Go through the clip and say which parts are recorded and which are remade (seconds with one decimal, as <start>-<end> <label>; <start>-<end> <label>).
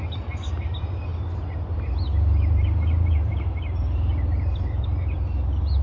0.0-5.8 remade